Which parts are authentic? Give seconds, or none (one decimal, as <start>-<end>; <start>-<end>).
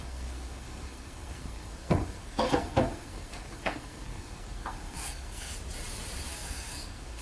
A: 5.5-6.3